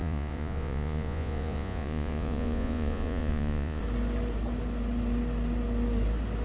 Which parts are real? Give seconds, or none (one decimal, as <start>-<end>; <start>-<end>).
3.8-6.4